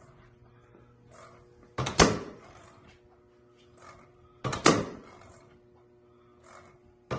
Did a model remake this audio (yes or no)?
no